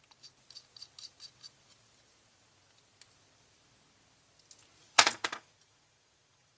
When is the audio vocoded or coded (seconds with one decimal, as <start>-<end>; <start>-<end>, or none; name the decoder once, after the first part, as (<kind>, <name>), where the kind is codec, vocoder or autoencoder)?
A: 4.8-6.6 (vocoder, Vocos)